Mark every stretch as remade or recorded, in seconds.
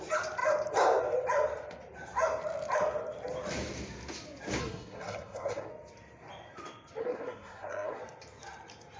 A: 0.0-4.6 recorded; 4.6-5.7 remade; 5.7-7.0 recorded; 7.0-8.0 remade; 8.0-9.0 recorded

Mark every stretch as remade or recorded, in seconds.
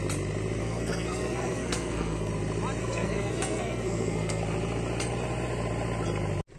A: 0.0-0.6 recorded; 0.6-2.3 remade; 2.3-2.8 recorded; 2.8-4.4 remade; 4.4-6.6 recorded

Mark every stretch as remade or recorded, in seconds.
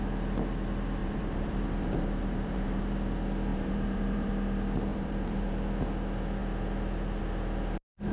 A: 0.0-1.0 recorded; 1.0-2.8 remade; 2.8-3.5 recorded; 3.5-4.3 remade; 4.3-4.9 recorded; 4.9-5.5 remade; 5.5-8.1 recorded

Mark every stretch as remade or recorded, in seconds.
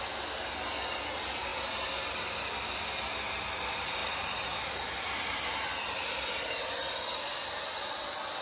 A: 0.0-8.4 recorded